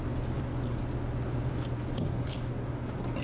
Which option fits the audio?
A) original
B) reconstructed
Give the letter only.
A